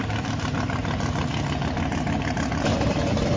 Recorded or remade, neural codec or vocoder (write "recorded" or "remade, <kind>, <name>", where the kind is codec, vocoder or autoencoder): recorded